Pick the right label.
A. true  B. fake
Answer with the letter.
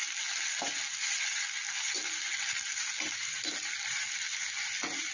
A